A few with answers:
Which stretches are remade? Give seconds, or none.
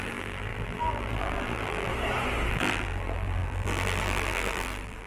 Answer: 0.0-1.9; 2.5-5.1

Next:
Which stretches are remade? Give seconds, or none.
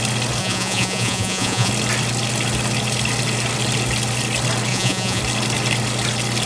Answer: 0.4-1.7; 4.7-5.2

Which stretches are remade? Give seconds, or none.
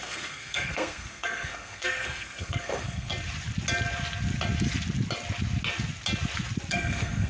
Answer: 0.0-3.1; 6.7-7.3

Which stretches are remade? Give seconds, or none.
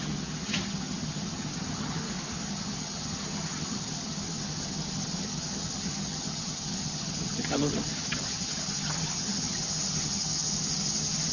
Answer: 0.0-2.0; 2.5-11.3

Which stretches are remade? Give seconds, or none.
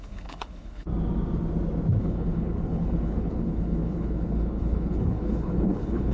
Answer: 0.0-0.9; 2.0-6.1